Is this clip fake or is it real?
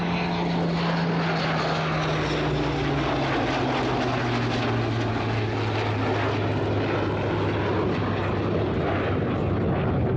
real